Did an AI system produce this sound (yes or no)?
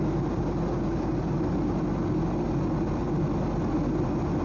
no